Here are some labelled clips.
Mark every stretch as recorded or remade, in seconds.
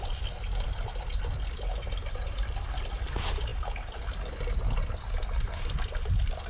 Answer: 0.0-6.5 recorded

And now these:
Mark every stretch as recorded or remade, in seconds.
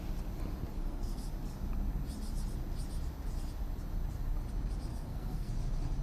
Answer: 0.0-0.7 recorded; 0.7-1.2 remade; 1.2-4.9 recorded; 4.9-5.5 remade; 5.5-6.0 recorded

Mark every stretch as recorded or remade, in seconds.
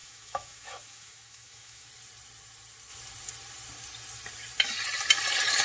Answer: 0.0-1.9 remade; 1.9-5.6 recorded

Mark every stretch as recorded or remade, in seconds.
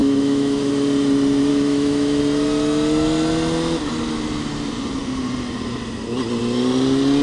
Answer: 0.0-0.7 remade; 0.7-1.5 recorded; 1.5-2.2 remade; 2.2-7.2 recorded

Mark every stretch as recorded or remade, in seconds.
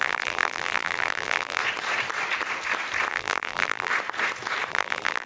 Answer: 0.0-1.6 remade; 1.6-3.1 recorded; 3.1-3.9 remade; 3.9-4.7 recorded; 4.7-5.3 remade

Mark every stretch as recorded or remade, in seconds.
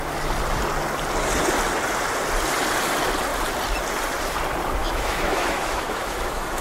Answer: 0.0-4.8 recorded; 4.8-6.6 remade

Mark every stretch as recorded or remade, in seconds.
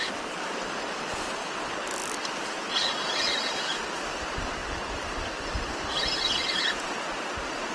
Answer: 0.0-4.6 recorded; 4.6-6.1 remade; 6.1-7.7 recorded